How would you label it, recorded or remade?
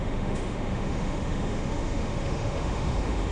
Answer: remade